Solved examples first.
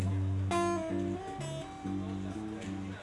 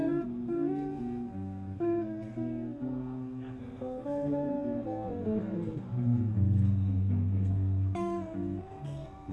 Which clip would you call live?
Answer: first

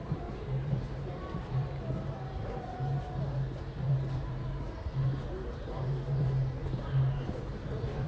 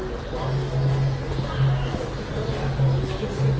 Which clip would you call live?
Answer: second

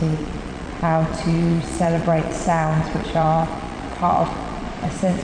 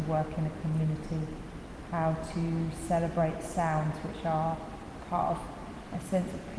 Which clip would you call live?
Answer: second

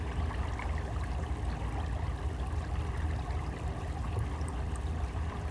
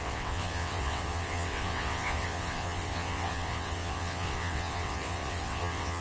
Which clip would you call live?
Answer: first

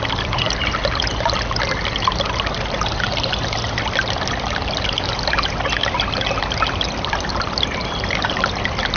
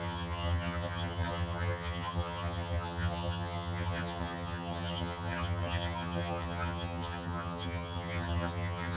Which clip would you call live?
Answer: first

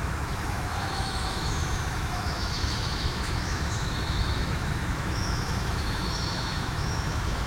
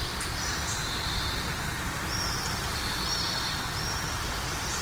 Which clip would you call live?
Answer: second